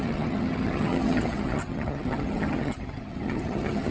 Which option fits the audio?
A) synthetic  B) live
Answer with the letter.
A